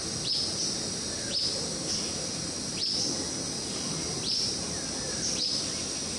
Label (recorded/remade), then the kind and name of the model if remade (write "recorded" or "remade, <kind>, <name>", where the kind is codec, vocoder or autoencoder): recorded